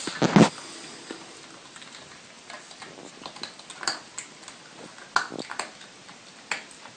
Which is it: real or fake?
real